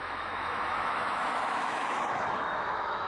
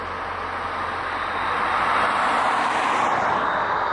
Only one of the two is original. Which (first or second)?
second